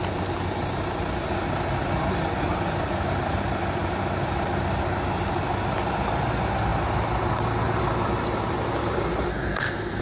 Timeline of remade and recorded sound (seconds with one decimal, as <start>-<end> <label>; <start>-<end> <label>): 0.0-9.3 recorded; 9.3-10.0 remade